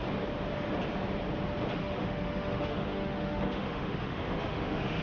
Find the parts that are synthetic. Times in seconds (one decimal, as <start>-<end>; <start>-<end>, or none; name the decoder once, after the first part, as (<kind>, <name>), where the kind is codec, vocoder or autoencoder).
1.8-5.0 (autoencoder, DAC-VAE)